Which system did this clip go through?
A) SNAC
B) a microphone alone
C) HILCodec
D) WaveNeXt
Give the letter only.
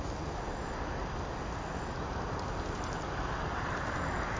B